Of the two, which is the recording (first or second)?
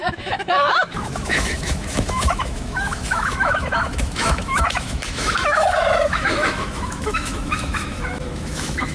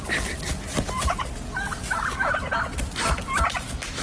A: second